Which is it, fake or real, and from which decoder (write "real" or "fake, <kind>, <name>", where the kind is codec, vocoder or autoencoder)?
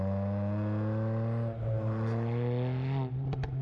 real